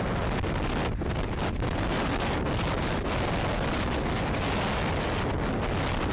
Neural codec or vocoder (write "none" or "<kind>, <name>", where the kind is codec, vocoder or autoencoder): none